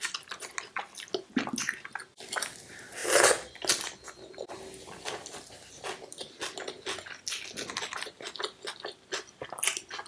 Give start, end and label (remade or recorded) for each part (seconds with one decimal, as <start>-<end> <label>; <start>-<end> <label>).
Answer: 0.0-10.1 recorded